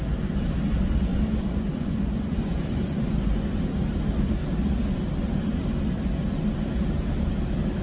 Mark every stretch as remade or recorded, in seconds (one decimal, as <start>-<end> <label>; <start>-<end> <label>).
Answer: 0.0-1.1 recorded; 1.1-3.6 remade; 3.6-7.8 recorded